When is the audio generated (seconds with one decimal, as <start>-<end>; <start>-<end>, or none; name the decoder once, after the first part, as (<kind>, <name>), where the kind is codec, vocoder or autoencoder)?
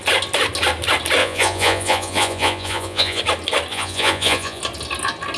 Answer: 1.2-3.2 (vocoder, Vocos); 3.7-4.6